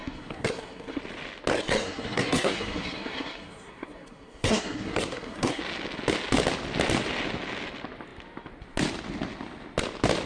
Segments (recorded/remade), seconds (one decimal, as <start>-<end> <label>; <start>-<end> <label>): 0.0-1.0 remade; 1.0-1.5 recorded; 1.5-5.6 remade; 5.6-10.3 recorded